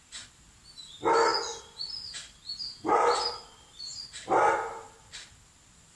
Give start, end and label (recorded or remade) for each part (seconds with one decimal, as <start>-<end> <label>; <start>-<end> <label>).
0.0-6.0 recorded